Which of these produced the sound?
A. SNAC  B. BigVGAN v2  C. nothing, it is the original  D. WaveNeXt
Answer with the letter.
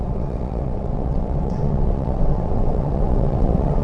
D